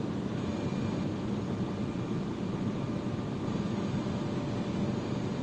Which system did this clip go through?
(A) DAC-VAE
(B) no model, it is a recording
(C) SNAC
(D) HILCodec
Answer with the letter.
B